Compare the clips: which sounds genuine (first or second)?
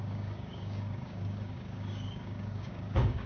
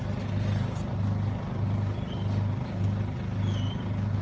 second